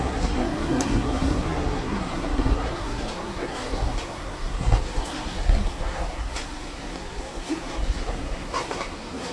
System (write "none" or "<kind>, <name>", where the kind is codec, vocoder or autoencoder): codec, SNAC